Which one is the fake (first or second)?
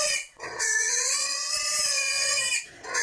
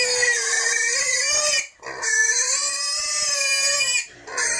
first